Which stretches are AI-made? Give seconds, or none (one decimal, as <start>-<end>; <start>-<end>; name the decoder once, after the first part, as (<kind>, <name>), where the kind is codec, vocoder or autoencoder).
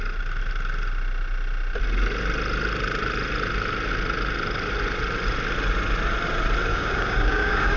6.7-7.8 (codec, DAC)